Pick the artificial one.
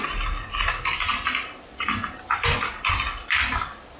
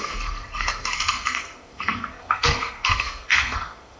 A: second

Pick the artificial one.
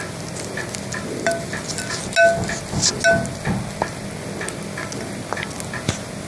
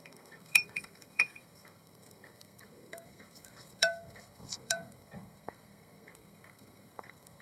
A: second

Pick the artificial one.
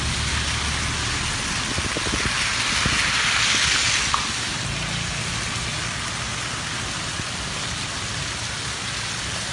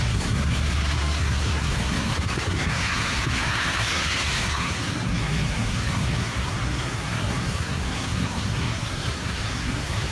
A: second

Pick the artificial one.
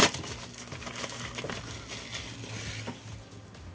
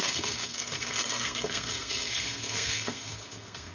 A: second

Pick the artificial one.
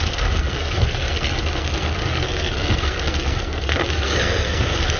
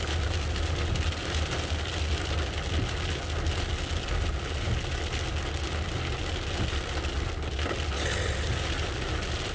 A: first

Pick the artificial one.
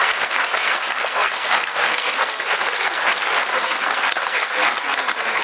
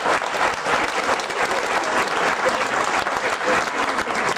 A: first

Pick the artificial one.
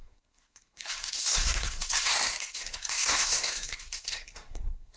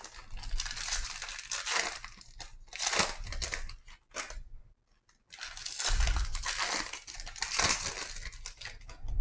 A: first